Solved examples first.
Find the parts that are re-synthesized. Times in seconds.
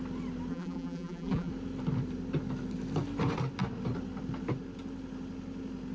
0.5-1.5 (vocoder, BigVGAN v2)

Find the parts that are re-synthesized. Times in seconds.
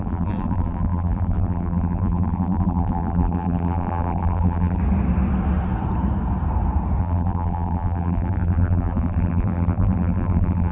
0.0-4.8 (vocoder, BigVGAN v2); 7.0-10.7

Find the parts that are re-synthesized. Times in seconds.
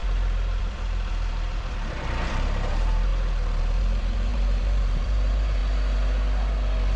0.0-3.1 (vocoder, BigVGAN v2); 3.6-5.6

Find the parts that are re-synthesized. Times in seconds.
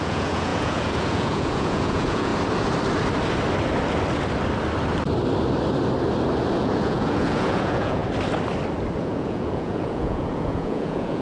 0.0-2.3 (vocoder, Vocos); 6.6-8.0; 9.0-11.2